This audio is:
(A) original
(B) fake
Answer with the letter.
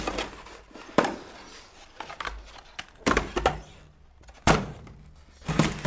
A